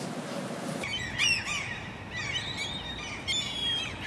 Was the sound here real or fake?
real